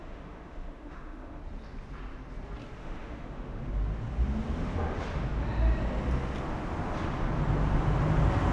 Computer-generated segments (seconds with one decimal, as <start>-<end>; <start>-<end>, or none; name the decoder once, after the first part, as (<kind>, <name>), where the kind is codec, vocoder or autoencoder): 0.0-1.4 (autoencoder, DAC-VAE); 2.8-3.6